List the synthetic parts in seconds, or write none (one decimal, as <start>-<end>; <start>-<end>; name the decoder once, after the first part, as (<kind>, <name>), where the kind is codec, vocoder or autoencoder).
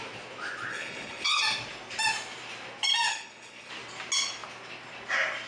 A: 0.7-1.4 (codec, HILCodec); 3.1-3.7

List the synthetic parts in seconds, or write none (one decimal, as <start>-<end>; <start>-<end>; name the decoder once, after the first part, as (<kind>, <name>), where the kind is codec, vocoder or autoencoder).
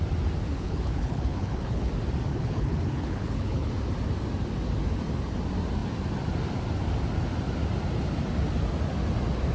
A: 0.5-1.9 (codec, HILCodec); 2.3-3.7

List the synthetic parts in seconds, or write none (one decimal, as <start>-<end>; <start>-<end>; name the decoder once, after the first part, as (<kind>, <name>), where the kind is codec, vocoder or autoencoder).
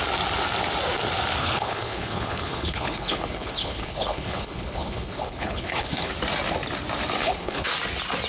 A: 1.4-6.1 (codec, HILCodec); 7.2-7.7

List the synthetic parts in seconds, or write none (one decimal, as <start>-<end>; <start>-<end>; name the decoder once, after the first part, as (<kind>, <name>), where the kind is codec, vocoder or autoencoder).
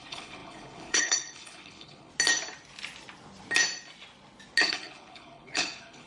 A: 0.0-2.1 (codec, HILCodec); 4.6-6.1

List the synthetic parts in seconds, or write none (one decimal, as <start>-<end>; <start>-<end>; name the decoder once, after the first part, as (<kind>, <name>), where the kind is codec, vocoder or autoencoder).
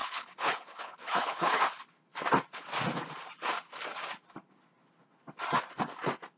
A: 0.0-1.6 (codec, HILCodec)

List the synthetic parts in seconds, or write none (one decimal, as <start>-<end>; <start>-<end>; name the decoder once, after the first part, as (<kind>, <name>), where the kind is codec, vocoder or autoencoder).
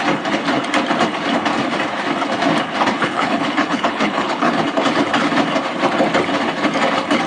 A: 3.0-4.6 (codec, HILCodec)